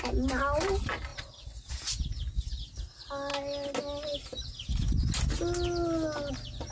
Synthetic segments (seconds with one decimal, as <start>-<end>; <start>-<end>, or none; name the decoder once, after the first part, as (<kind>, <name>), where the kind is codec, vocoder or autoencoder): none